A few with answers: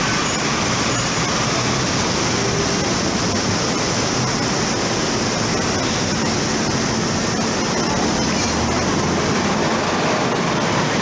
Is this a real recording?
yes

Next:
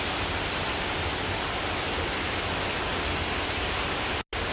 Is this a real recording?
yes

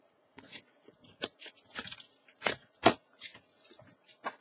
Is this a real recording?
no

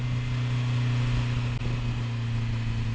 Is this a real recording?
yes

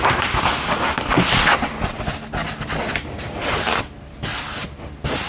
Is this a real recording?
yes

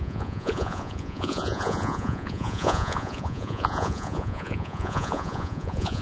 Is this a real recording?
no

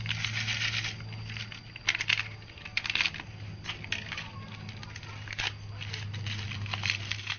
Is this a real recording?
yes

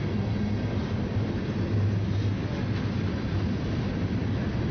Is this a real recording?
yes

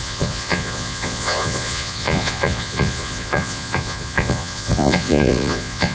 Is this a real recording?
no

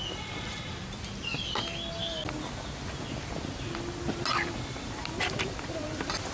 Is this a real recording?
yes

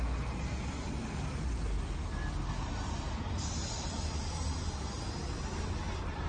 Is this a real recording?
yes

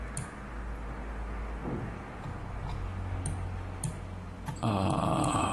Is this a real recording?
yes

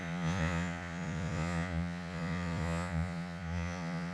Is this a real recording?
no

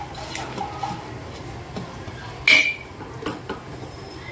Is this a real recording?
yes